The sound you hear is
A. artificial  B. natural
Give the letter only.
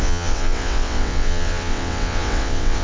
A